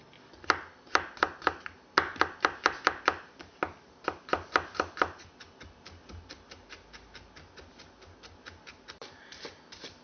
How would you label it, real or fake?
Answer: real